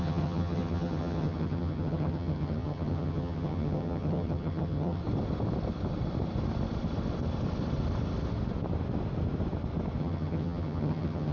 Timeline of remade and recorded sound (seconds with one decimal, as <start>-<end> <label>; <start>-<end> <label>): 0.0-5.0 remade; 5.0-10.0 recorded; 10.0-11.3 remade